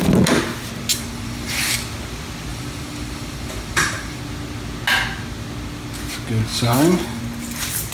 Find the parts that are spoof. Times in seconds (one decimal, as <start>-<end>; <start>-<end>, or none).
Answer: 0.9-1.7; 2.5-4.2; 6.5-7.2